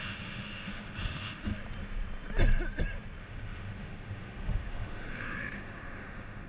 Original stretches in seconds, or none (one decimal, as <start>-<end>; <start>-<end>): 1.5-3.2